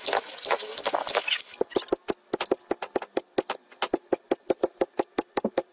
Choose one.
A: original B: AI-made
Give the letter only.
A